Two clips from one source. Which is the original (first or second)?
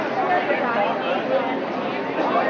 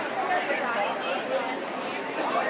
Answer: first